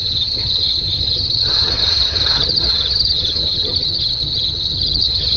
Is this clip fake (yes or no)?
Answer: yes